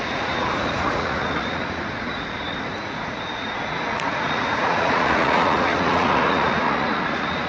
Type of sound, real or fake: fake